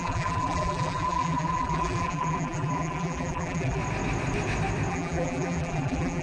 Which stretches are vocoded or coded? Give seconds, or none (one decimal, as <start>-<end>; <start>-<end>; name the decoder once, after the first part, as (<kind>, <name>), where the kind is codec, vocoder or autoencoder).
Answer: 0.0-3.8 (vocoder, BigVGAN v2); 4.9-6.2